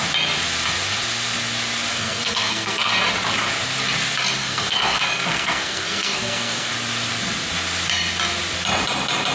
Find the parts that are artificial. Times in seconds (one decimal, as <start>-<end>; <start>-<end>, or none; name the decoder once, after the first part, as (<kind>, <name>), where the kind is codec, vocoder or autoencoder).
1.9-2.9 (codec, SNAC); 4.4-6.7